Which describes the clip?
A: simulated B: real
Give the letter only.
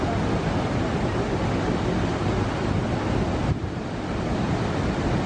B